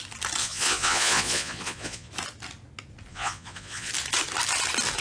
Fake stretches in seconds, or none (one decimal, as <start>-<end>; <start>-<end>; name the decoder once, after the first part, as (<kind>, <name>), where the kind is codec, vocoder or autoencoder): 0.4-2.1 (vocoder, Vocos); 3.1-3.9